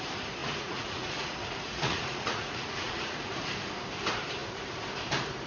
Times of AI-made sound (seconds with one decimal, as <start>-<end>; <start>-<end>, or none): 0.4-3.3